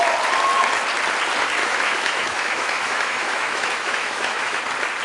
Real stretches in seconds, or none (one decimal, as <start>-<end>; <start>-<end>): 0.0-1.6; 4.6-5.0